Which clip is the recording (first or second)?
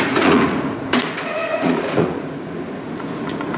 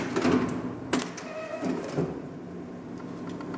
second